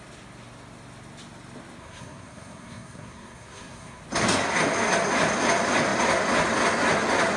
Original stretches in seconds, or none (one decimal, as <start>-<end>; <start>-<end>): 0.0-1.8; 4.0-7.4